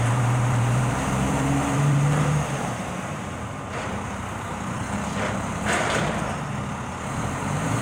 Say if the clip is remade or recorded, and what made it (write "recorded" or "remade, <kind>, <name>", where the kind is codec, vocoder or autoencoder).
remade, vocoder, BigVGAN v2